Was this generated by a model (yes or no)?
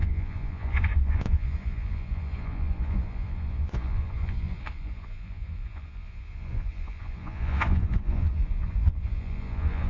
yes